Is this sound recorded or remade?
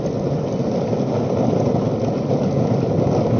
recorded